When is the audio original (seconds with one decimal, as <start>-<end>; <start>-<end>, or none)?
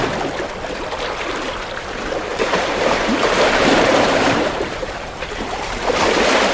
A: 0.0-2.3; 5.9-6.5